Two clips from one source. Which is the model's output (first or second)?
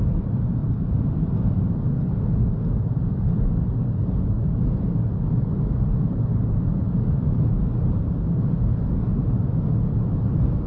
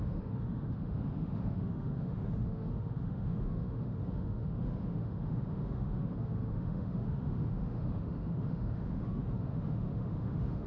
second